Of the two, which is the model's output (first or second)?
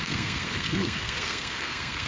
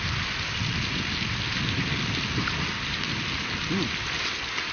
first